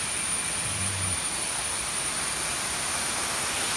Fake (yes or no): no